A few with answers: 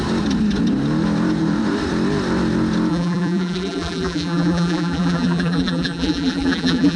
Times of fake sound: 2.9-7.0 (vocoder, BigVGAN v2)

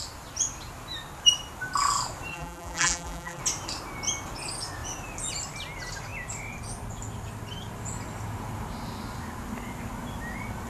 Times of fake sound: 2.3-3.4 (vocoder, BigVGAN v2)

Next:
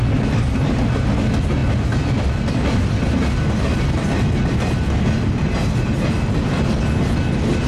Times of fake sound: none

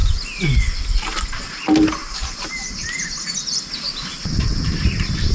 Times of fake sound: 4.1-4.7 (vocoder, BigVGAN v2)

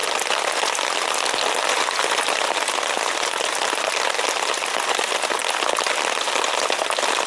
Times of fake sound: none

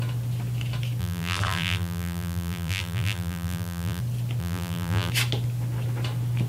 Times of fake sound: 1.0-4.0 (vocoder, BigVGAN v2); 4.4-5.1

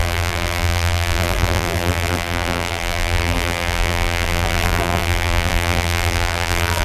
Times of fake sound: 0.0-6.8 (vocoder, BigVGAN v2)